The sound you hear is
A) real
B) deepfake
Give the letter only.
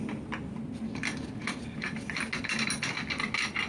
A